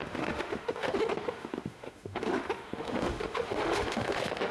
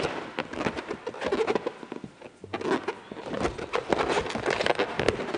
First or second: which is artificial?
first